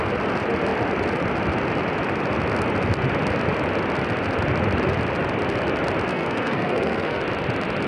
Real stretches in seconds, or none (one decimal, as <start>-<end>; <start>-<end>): 0.0-6.1; 7.2-7.9